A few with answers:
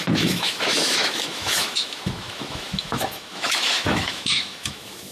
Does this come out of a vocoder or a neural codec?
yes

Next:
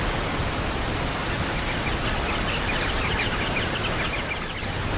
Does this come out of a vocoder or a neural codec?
no